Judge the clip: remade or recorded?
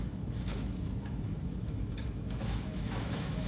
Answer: remade